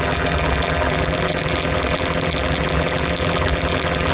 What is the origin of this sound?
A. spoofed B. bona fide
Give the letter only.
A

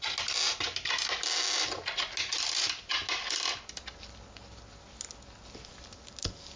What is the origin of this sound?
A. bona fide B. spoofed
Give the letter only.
A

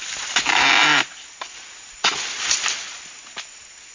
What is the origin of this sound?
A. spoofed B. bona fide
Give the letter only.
B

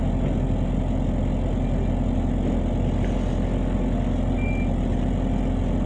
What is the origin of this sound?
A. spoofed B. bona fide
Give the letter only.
B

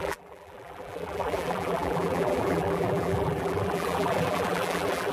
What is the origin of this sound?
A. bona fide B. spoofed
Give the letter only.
B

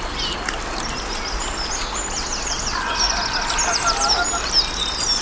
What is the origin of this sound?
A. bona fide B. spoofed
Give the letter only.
A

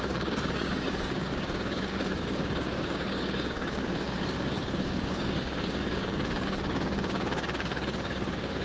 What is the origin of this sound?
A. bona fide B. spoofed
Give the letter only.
B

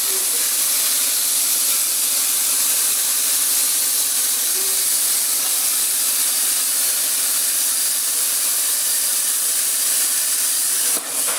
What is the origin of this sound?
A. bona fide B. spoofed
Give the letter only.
A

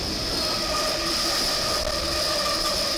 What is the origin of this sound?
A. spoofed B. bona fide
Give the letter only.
B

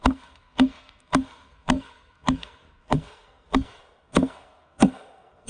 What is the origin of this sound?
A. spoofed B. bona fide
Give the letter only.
A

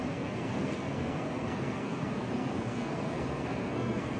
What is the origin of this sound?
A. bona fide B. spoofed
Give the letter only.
B